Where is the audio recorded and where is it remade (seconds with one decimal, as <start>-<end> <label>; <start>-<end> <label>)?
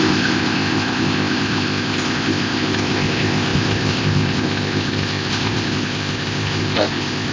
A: 0.0-7.3 remade